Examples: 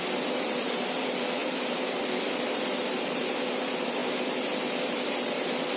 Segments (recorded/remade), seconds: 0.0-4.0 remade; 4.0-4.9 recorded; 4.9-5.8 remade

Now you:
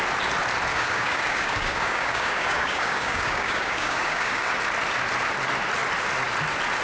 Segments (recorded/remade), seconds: 0.0-0.7 recorded; 0.7-4.5 remade; 4.5-6.8 recorded

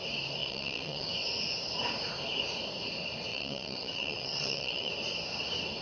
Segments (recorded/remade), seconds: 0.0-0.4 recorded; 0.4-1.1 remade; 1.1-3.3 recorded; 3.3-4.9 remade; 4.9-5.8 recorded